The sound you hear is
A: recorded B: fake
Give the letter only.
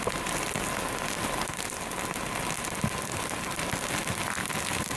A